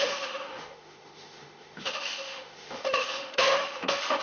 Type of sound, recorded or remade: remade